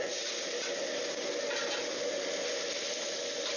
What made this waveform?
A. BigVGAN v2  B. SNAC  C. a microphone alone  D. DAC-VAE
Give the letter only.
C